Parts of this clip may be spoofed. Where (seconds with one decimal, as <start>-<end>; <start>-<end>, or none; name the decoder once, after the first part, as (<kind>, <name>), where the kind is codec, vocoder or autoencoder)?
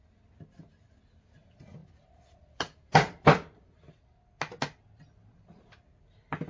1.8-4.0 (vocoder, BigVGAN v2)